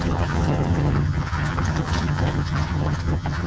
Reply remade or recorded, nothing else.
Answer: remade